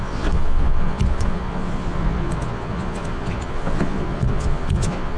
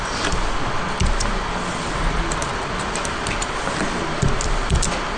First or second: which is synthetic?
first